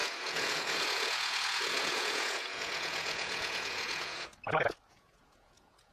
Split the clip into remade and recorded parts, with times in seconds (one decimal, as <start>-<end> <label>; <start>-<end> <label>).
0.0-4.3 remade; 4.3-4.9 recorded; 4.9-5.9 remade